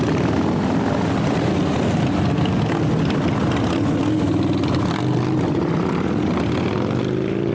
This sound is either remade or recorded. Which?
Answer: recorded